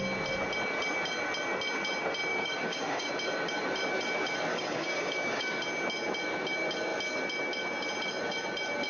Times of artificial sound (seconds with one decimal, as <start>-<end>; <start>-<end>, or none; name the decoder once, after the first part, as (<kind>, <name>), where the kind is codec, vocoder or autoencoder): 2.3-3.1 (codec, DAC); 4.5-5.6